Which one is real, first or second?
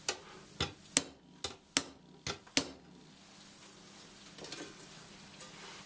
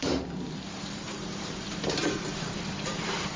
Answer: first